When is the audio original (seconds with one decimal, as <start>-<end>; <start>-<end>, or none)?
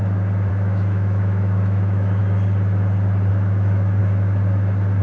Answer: 0.0-0.5; 2.2-3.3; 4.0-5.0